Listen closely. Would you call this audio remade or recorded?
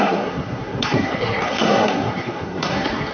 remade